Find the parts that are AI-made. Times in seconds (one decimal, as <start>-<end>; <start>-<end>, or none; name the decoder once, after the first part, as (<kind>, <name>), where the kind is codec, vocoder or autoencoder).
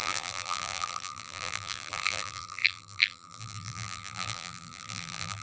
0.0-5.4 (vocoder, BigVGAN v2)